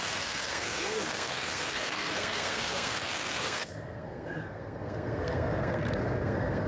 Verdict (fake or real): fake